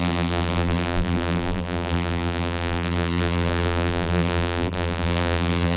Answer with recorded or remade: remade